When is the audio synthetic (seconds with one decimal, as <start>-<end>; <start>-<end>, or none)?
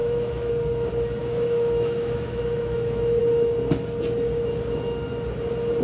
0.0-0.5; 1.2-3.2